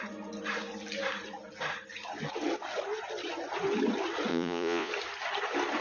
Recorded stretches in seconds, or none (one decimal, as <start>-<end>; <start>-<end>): 0.0-4.3; 4.9-5.8